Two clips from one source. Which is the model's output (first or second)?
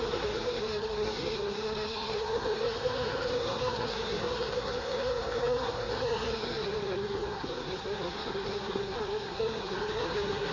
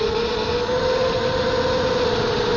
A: first